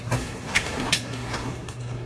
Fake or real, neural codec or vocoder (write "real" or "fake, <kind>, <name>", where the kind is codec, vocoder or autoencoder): fake, codec, SNAC